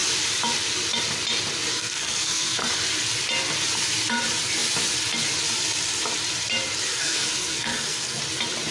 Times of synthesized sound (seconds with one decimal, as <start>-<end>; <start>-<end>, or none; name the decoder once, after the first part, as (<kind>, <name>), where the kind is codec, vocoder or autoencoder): 1.7-2.7 (codec, SNAC); 6.9-8.2